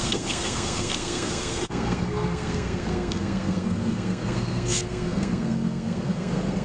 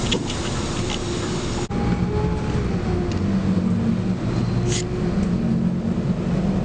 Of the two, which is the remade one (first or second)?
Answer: first